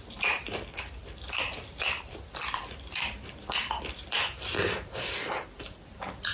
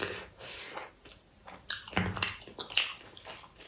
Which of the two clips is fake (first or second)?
first